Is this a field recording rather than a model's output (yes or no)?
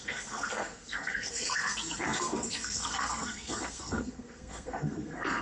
no